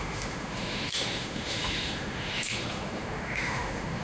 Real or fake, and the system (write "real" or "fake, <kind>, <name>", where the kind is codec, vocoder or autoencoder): fake, autoencoder, DAC-VAE